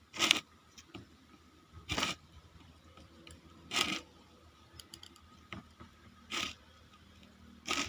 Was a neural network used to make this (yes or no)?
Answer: yes